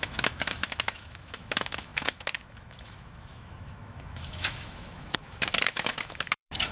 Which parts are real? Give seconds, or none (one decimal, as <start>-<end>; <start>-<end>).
none